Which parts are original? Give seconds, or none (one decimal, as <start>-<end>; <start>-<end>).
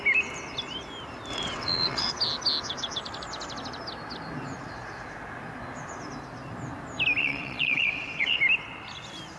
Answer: 0.0-1.3; 2.1-7.2; 8.4-9.4